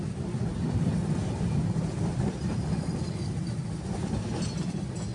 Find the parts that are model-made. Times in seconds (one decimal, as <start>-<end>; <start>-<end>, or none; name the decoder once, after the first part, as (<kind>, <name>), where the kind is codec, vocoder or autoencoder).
0.5-3.2 (vocoder, BigVGAN v2)